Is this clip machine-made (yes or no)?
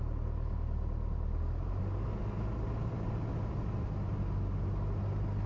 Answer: no